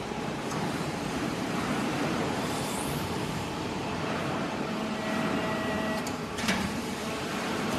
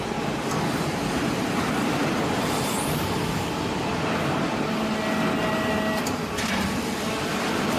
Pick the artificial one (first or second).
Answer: first